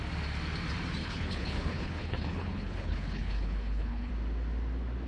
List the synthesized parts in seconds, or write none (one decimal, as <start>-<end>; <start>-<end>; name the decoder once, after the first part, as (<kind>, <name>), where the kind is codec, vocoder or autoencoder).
1.0-4.1 (codec, HILCodec)